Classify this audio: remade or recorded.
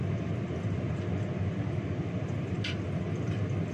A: recorded